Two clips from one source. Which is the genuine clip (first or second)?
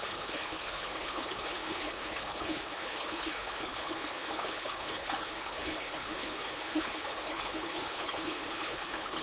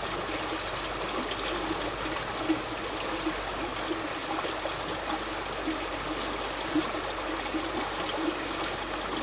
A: second